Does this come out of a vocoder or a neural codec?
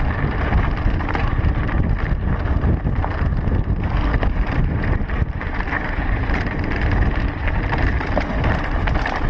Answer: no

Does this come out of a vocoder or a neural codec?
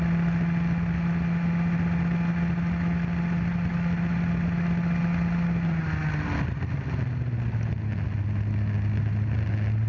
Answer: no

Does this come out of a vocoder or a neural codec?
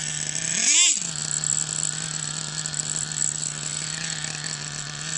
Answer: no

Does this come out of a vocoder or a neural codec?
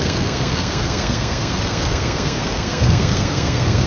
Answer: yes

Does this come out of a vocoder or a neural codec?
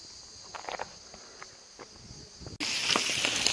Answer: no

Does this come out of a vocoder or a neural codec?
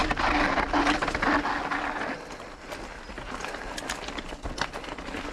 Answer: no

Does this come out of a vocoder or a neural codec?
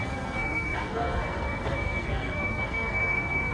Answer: yes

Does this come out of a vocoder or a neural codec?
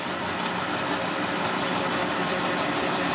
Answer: no